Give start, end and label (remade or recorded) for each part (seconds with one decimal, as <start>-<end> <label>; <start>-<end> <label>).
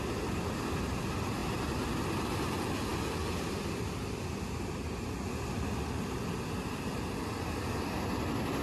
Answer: 0.0-8.6 recorded